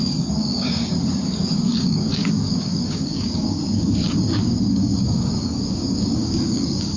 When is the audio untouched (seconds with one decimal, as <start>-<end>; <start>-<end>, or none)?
none